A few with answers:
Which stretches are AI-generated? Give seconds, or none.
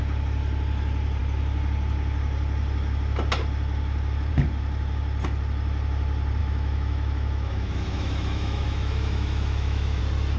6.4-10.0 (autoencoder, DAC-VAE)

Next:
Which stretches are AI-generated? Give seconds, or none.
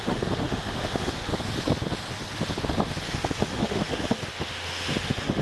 0.0-1.3 (autoencoder, DAC-VAE); 3.4-5.4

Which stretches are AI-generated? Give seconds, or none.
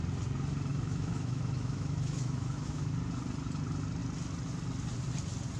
0.7-2.9 (autoencoder, DAC-VAE)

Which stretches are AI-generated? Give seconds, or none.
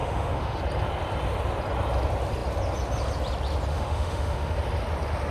0.0-0.6 (autoencoder, DAC-VAE); 3.7-4.6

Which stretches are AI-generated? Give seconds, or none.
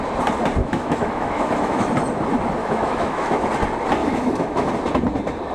0.6-1.9 (autoencoder, DAC-VAE); 2.6-3.5; 4.0-4.7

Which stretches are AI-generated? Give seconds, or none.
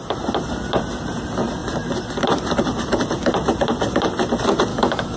4.7-5.2 (autoencoder, DAC-VAE)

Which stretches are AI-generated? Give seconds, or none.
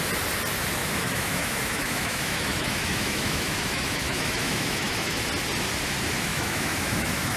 0.8-5.2 (autoencoder, DAC-VAE); 6.3-7.4